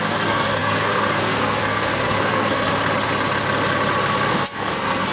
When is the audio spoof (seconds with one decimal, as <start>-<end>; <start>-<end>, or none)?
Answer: 0.0-2.7; 4.3-5.1